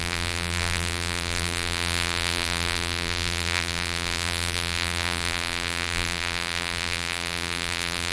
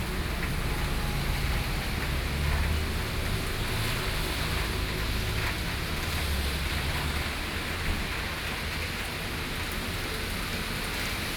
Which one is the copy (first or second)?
first